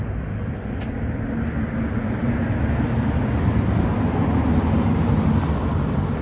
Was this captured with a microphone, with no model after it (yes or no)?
yes